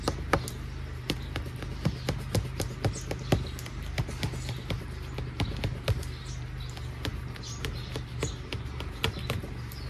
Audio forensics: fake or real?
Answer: real